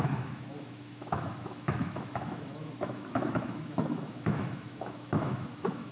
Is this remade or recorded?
remade